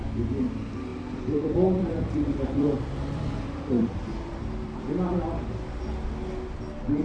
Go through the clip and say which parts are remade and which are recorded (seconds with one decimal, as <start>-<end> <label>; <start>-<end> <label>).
0.0-0.9 recorded; 0.9-4.9 remade; 4.9-7.0 recorded